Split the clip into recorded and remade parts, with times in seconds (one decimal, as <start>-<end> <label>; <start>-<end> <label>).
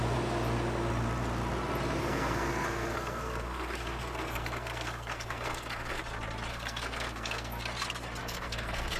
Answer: 0.0-2.0 recorded; 2.0-6.0 remade; 6.0-6.5 recorded; 6.5-7.6 remade; 7.6-8.2 recorded; 8.2-9.0 remade